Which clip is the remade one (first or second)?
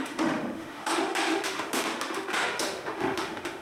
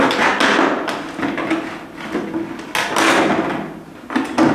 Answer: first